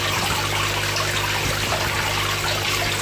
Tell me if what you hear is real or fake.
real